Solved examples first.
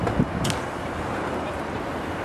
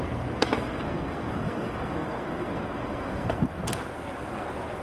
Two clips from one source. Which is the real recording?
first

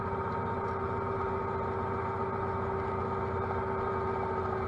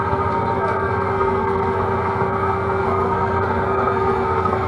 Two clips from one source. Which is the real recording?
first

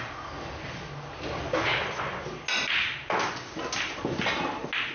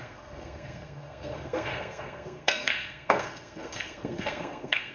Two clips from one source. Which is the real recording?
first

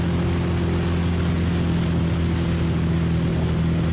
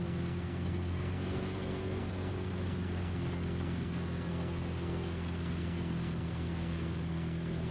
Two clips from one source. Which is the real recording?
first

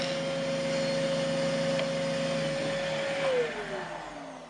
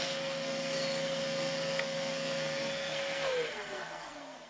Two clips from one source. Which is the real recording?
first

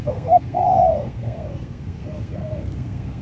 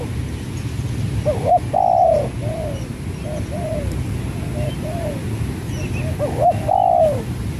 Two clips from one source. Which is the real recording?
second